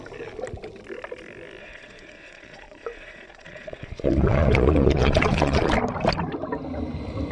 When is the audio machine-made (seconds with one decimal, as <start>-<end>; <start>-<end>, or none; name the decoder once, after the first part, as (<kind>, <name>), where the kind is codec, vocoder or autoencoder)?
1.6-5.7 (vocoder, Vocos)